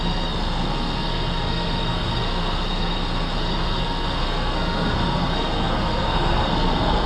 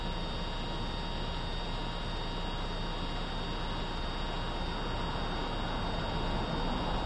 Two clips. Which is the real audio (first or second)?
second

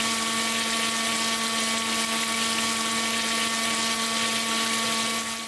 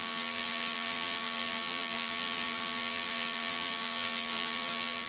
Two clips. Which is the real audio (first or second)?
first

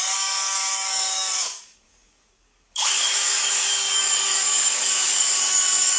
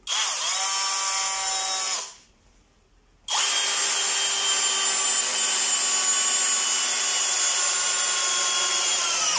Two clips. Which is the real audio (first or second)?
second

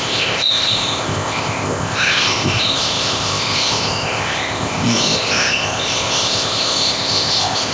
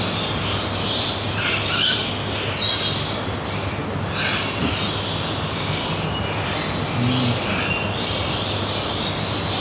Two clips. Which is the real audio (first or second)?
second